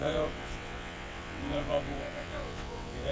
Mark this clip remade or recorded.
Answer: remade